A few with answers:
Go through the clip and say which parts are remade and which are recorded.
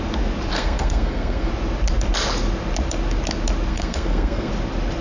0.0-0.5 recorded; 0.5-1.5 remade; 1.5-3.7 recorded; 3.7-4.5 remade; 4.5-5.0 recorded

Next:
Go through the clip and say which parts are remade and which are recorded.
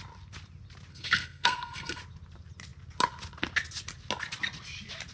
0.0-0.9 recorded; 0.9-2.0 remade; 2.0-5.1 recorded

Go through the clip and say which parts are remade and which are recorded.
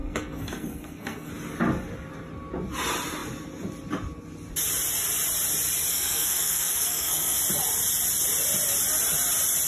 0.0-1.3 remade; 1.3-5.9 recorded; 5.9-7.4 remade; 7.4-9.7 recorded